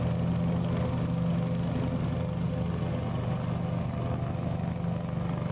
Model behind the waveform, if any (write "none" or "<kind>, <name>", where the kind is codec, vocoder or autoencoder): none